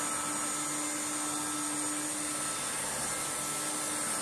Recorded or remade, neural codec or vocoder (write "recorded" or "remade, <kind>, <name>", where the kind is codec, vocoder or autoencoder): recorded